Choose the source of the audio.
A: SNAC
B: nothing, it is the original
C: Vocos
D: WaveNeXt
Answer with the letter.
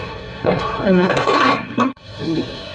A